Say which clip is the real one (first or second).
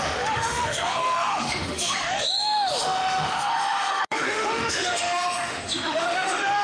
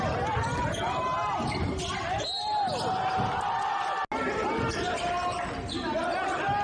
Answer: second